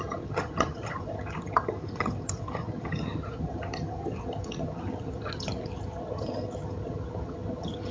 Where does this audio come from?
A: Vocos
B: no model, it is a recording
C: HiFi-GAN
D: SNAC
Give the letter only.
C